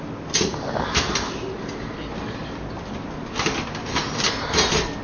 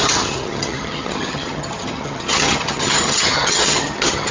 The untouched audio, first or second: first